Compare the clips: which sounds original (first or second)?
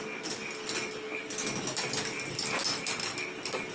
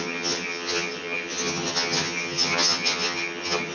first